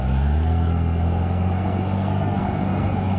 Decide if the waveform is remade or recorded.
remade